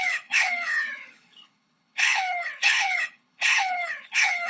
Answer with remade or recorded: remade